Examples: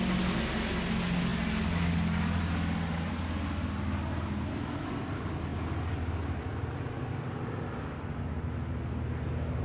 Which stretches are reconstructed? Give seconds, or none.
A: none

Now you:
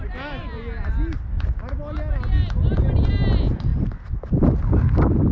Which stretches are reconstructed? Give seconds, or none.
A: none

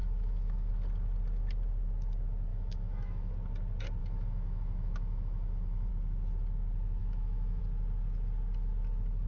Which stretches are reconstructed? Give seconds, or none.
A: 0.0-0.7 (autoencoder, DAC-VAE); 2.5-3.3; 4.0-5.9; 7.0-7.6